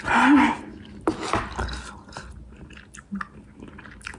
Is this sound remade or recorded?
recorded